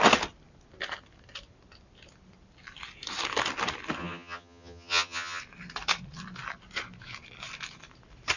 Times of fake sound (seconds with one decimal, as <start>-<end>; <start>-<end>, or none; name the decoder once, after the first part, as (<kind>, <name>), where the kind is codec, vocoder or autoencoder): 4.0-5.4 (vocoder, HiFi-GAN)